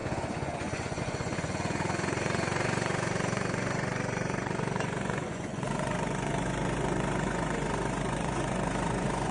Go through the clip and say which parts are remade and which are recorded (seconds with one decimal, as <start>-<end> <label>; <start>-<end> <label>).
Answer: 0.0-9.3 remade